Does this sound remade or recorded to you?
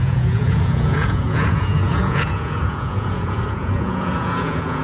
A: remade